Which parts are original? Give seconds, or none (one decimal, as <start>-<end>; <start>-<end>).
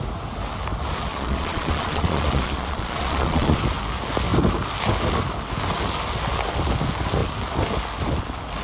0.0-1.1; 3.6-8.6